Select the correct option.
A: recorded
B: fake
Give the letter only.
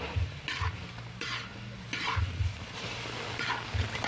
A